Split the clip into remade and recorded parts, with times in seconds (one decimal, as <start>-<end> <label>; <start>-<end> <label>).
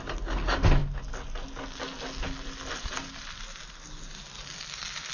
0.0-5.1 recorded